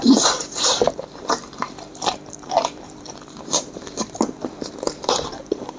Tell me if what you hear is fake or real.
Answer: fake